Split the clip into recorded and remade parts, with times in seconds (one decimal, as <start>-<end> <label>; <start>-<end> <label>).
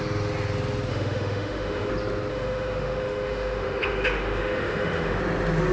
0.0-0.9 recorded; 0.9-1.9 remade; 1.9-2.3 recorded; 2.3-5.2 remade; 5.2-5.7 recorded